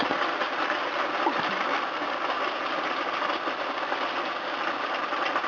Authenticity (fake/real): real